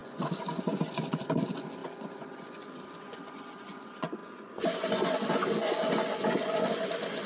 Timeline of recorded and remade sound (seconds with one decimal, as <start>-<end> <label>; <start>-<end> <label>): 0.0-7.3 remade